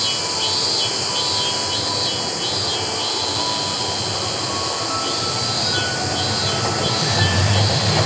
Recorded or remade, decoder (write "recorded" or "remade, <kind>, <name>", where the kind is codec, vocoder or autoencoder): recorded